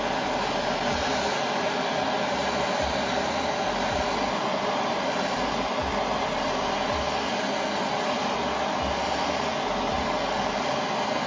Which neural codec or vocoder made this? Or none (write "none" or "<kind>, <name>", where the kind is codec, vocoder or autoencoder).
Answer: none